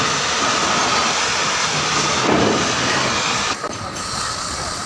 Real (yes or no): yes